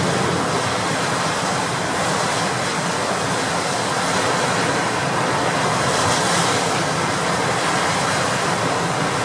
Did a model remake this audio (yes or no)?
no